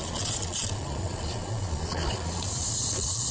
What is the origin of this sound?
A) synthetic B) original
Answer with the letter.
A